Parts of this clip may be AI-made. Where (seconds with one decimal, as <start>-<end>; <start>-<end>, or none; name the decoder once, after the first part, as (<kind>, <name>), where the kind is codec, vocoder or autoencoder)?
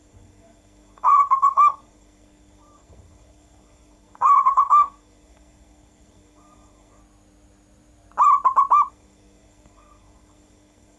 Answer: 0.0-7.0 (codec, SNAC); 8.9-11.0